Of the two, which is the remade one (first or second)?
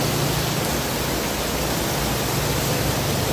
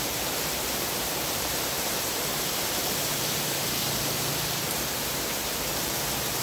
second